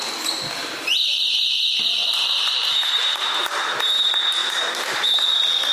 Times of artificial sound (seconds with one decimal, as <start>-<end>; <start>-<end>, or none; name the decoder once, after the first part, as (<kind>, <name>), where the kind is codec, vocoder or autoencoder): 0.6-1.4 (vocoder, BigVGAN v2); 2.0-3.3; 4.4-5.2